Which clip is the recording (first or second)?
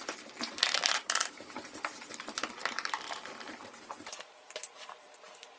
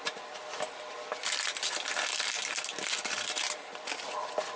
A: second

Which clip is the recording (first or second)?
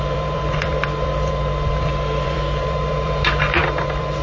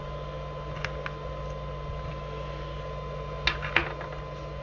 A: second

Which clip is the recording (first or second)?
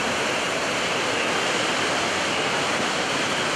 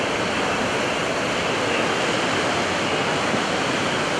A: second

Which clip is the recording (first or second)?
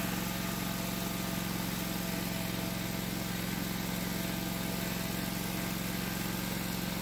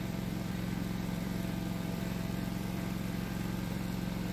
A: first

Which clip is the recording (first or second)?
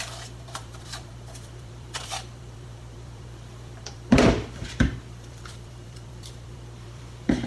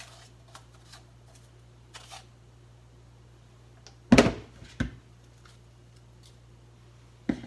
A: second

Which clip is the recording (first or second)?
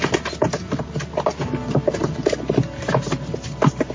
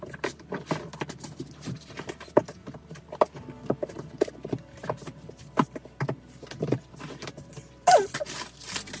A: first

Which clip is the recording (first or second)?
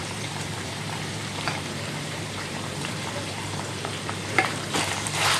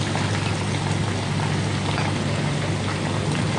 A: second